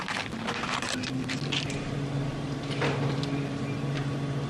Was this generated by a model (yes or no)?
no